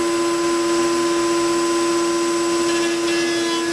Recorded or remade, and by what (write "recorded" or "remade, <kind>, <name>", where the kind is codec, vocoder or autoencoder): recorded